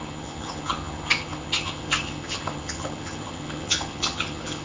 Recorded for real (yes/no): no